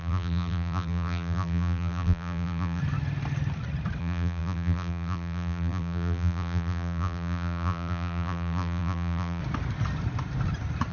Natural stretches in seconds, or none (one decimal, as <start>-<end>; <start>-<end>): 2.8-4.0; 9.4-10.9